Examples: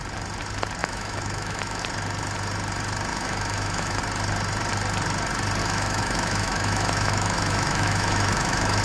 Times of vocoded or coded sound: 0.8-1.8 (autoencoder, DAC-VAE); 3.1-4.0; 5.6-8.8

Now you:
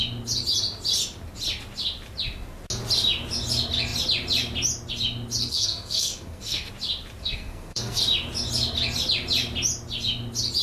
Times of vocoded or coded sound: 5.4-6.7 (codec, SNAC); 7.2-8.0